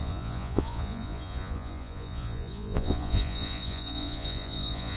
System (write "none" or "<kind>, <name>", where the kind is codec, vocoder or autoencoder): vocoder, Vocos